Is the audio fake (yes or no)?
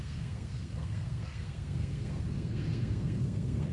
yes